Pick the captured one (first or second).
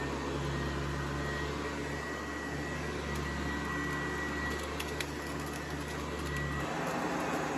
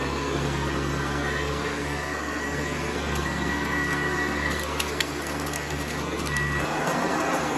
first